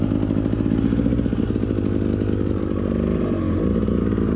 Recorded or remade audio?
recorded